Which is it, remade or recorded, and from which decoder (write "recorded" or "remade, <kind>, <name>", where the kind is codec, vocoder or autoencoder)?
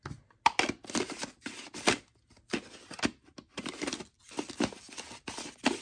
recorded